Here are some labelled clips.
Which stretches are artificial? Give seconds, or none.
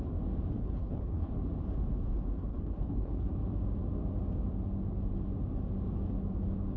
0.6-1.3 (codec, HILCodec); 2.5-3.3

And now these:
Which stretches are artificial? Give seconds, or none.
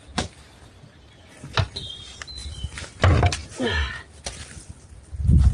none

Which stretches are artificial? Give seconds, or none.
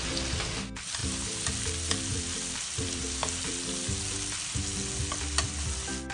1.0-1.5 (vocoder, BigVGAN v2); 2.1-3.6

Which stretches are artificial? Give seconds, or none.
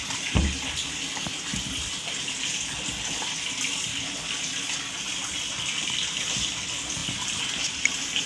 none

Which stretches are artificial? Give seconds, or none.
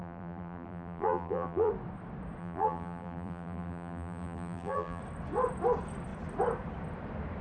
0.0-1.7 (vocoder, BigVGAN v2); 2.4-5.0